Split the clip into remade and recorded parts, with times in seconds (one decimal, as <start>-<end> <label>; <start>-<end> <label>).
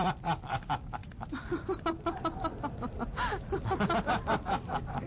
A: 0.0-0.6 remade; 0.6-1.0 recorded; 1.0-2.9 remade; 2.9-5.1 recorded